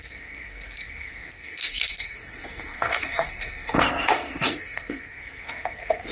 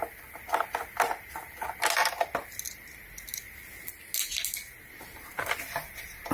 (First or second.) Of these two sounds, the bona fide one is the second